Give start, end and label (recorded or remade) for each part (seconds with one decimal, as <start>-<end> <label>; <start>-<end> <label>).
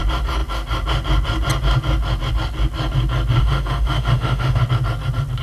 0.0-3.4 recorded; 3.4-4.6 remade; 4.6-5.4 recorded